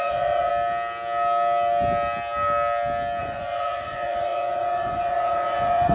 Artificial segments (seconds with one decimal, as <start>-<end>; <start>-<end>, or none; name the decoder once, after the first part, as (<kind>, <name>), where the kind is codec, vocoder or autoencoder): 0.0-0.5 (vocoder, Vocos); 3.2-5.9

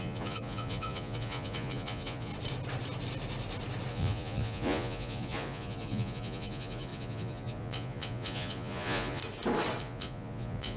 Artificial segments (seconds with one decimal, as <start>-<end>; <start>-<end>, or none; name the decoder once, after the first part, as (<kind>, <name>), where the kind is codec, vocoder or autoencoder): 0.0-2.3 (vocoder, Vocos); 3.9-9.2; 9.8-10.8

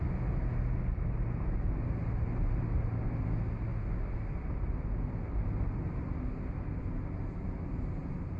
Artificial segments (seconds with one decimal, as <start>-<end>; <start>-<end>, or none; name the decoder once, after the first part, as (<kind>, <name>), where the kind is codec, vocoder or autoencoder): none

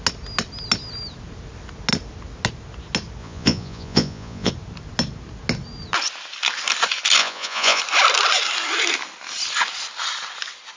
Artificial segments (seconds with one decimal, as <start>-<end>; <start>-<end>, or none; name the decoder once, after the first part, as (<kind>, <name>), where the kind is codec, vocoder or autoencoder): 3.2-4.5 (vocoder, Vocos); 7.2-7.8

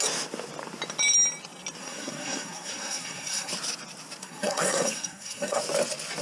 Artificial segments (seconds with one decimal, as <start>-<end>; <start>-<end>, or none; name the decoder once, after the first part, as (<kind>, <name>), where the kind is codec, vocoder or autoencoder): 1.8-3.5 (codec, SNAC); 4.2-5.6

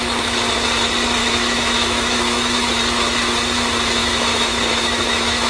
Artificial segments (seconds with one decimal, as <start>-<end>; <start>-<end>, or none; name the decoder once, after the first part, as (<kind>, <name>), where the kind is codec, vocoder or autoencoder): 1.2-2.7 (autoencoder, DAC-VAE); 4.0-5.5